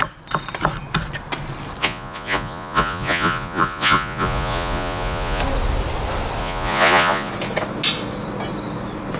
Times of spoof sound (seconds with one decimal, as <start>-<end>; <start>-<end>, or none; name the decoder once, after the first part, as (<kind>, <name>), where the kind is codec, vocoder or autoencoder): 1.8-5.4 (vocoder, Vocos); 6.4-7.3